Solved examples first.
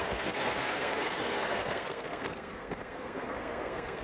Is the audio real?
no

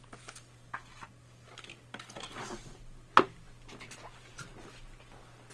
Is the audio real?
yes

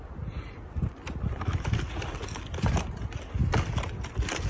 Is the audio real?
yes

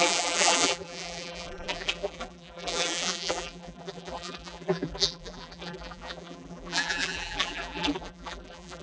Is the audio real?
no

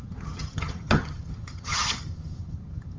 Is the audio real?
no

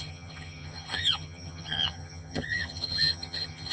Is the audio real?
no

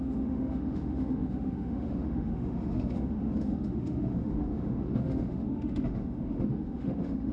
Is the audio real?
no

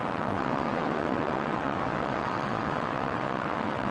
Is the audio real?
no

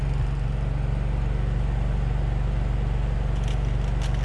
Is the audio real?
yes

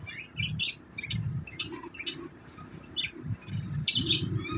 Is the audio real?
yes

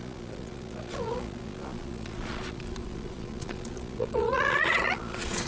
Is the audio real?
no